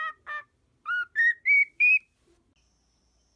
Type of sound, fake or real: real